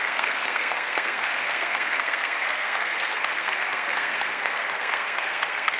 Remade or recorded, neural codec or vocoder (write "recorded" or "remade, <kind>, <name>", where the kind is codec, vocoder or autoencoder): remade, codec, SNAC